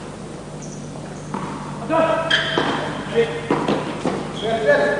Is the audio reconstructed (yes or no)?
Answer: yes